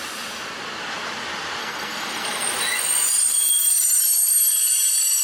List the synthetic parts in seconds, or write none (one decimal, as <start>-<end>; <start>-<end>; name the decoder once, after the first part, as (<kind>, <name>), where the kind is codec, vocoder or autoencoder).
1.6-2.5 (codec, SNAC)